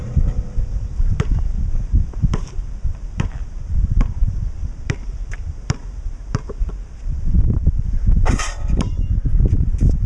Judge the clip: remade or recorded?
remade